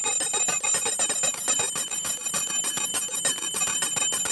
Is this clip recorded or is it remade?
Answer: recorded